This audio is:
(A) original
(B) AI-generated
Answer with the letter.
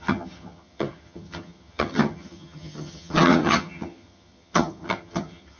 B